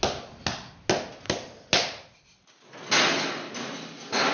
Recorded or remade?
recorded